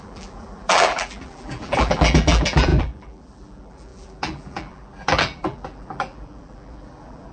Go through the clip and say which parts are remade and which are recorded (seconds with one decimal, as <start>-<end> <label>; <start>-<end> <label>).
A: 0.0-7.3 remade